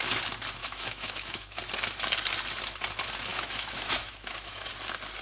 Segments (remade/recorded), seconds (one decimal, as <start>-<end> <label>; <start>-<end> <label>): 0.0-0.6 recorded; 0.6-1.6 remade; 1.6-3.3 recorded; 3.3-4.7 remade; 4.7-5.2 recorded